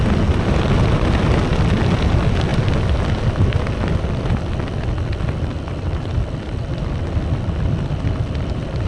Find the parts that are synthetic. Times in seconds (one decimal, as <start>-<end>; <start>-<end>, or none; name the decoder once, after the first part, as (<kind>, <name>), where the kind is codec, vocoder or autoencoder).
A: none